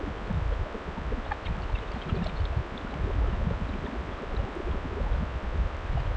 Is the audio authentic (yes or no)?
yes